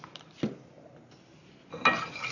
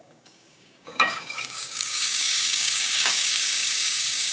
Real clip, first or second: first